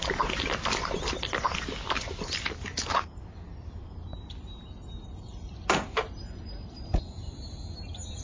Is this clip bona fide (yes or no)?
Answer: yes